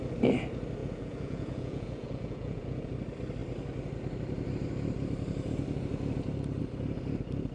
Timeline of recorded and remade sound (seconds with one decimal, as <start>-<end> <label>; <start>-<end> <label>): 0.0-0.8 recorded; 0.8-2.9 remade; 2.9-7.5 recorded